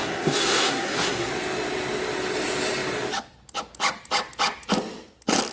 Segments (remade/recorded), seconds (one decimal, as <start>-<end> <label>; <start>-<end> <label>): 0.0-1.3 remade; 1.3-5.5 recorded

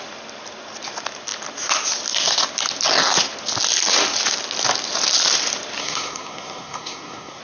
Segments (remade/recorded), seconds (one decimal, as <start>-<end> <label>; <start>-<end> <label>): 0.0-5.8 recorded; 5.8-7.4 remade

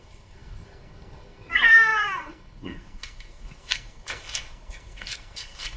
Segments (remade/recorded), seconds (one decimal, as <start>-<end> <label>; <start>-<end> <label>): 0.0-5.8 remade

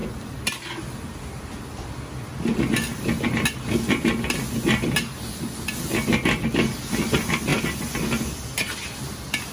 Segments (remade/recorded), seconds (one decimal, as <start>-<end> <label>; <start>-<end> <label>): 0.0-9.5 recorded